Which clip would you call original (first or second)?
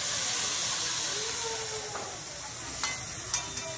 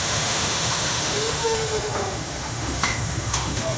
first